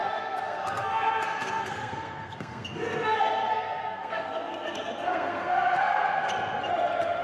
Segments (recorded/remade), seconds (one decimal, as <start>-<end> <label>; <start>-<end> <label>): 0.0-6.3 remade; 6.3-7.2 recorded